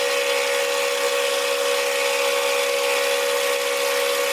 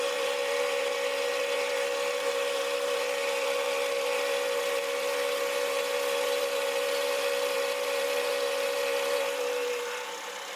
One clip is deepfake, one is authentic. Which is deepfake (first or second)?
second